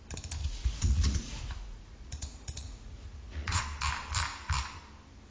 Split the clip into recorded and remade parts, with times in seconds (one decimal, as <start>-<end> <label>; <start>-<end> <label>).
0.0-0.4 recorded; 0.4-3.6 remade; 3.6-5.3 recorded